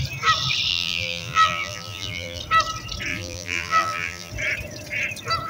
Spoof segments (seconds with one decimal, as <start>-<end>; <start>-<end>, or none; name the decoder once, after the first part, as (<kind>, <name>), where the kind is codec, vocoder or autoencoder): 0.7-2.4 (vocoder, BigVGAN v2); 3.1-4.3